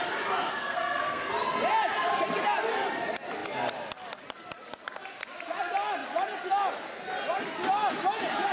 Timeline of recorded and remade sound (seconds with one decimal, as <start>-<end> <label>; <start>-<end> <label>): 0.0-0.6 recorded; 0.6-1.3 remade; 1.3-8.5 recorded